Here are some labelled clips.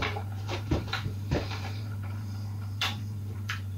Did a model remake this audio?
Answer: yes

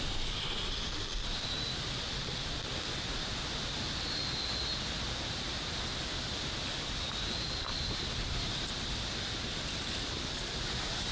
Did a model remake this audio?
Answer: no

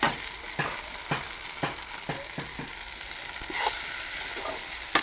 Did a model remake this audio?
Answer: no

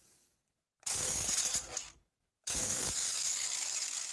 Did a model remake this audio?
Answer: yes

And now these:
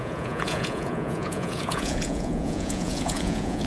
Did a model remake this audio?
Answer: yes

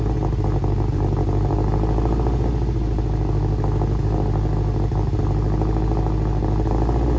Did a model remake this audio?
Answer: no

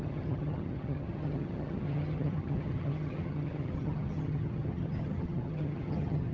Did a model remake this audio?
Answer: yes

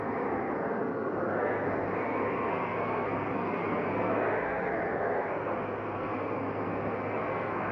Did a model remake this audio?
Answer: yes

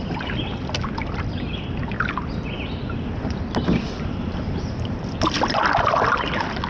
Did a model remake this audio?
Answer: no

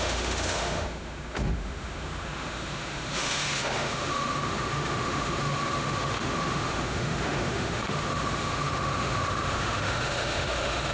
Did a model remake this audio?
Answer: yes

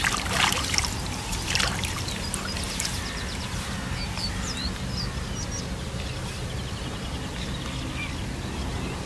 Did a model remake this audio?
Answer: no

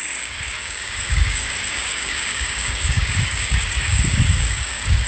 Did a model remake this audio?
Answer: yes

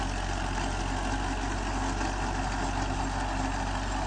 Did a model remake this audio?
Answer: no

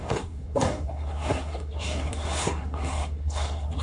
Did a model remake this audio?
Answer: yes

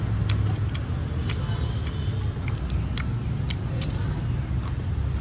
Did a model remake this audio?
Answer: no